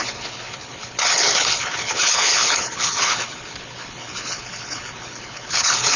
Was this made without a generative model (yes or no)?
no